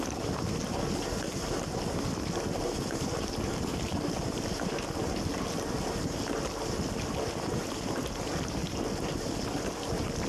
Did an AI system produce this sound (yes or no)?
no